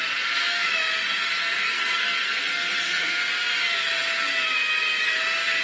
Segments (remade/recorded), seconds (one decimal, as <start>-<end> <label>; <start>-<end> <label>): 0.0-1.4 recorded; 1.4-3.2 remade; 3.2-5.6 recorded